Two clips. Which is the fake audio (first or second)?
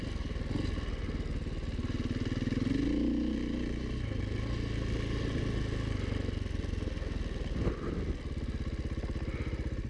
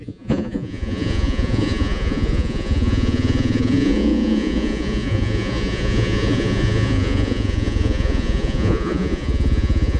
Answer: second